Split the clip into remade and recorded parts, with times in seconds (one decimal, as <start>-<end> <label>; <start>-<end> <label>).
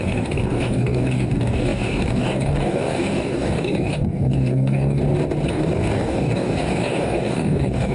0.0-5.0 remade; 5.0-5.5 recorded; 5.5-7.9 remade